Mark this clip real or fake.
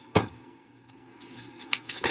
fake